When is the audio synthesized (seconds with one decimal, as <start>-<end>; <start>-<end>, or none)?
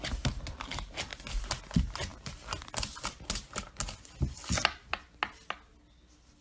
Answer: none